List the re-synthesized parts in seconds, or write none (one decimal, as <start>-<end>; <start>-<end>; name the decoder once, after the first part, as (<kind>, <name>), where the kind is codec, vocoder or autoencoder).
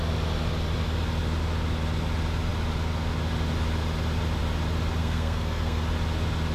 5.0-5.8 (codec, SNAC)